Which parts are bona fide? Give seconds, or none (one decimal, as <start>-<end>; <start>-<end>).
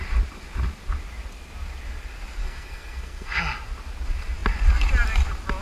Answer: 0.0-2.4; 3.4-5.6